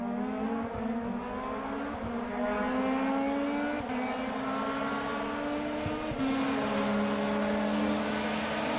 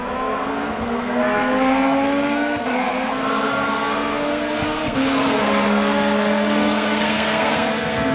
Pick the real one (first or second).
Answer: first